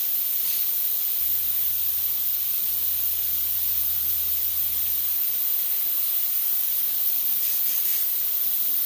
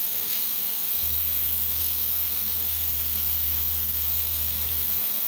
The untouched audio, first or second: first